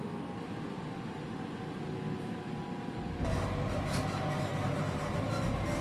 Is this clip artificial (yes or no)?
no